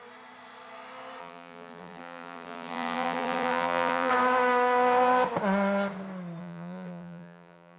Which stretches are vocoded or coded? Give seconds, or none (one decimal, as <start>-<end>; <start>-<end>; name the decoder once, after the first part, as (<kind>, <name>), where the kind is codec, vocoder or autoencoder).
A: 1.2-4.1 (vocoder, BigVGAN v2); 6.4-7.8